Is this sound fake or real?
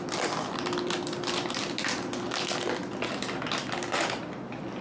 real